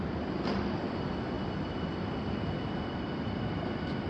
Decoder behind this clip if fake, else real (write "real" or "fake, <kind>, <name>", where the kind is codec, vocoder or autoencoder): real